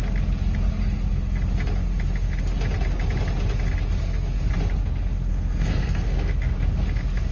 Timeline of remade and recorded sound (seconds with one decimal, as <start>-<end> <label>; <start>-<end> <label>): 0.0-5.3 recorded; 5.3-6.3 remade; 6.3-7.3 recorded